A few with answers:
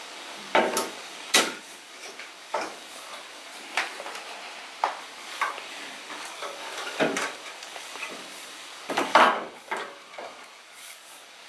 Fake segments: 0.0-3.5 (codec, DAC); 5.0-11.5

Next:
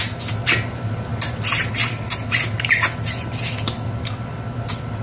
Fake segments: none

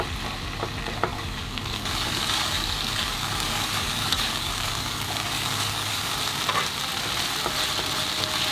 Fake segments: 1.1-6.1 (codec, DAC)